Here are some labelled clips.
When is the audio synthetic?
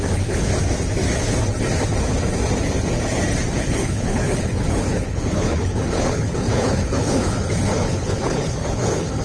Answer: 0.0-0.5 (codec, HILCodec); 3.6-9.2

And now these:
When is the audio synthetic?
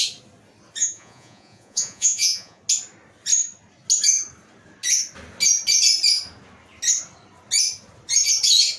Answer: 0.8-2.6 (vocoder, Vocos)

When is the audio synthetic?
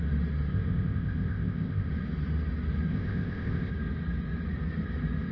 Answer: 0.5-1.9 (codec, ZipCodec); 2.9-3.7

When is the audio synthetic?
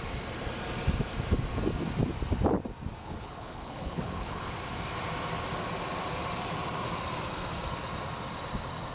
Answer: 3.0-4.5 (codec, HILCodec)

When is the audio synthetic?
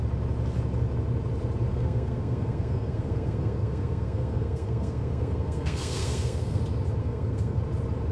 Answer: 1.7-6.6 (codec, SNAC); 7.0-7.6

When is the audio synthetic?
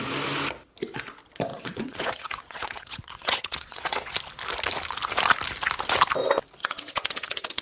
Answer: 1.5-4.1 (vocoder, WaveNeXt); 6.6-7.6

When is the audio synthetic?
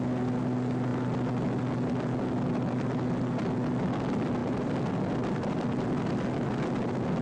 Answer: none